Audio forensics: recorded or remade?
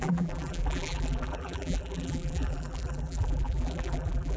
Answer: remade